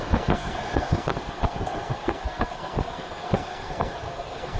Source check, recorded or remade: remade